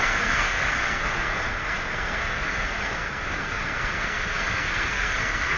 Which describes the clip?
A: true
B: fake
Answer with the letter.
B